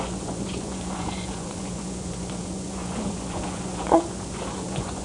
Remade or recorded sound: remade